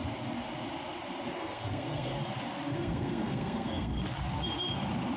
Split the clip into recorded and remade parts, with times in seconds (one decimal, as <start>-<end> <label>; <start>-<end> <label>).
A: 0.0-1.3 recorded; 1.3-2.1 remade; 2.1-2.7 recorded; 2.7-3.9 remade; 3.9-5.2 recorded